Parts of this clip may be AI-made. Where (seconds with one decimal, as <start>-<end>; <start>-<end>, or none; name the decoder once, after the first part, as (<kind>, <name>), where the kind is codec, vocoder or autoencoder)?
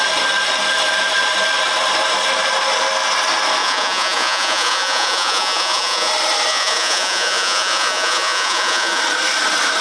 3.6-6.1 (vocoder, Vocos); 6.5-9.0